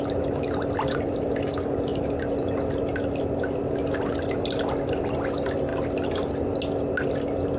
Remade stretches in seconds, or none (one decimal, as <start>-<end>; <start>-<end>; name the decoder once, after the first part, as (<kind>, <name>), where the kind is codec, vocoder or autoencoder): none